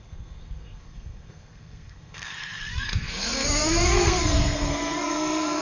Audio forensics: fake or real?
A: fake